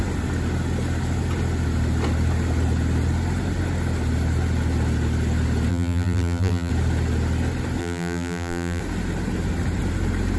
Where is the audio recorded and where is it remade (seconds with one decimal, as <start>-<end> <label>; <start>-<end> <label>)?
0.0-5.7 recorded; 5.7-6.7 remade; 6.7-7.8 recorded; 7.8-8.8 remade; 8.8-10.4 recorded